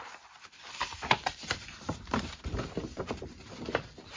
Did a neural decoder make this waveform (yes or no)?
yes